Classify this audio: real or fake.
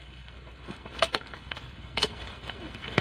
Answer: fake